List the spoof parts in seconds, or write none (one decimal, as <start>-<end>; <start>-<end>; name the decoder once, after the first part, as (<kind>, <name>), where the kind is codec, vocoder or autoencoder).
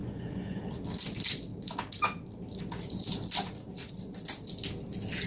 0.0-0.6 (vocoder, Vocos)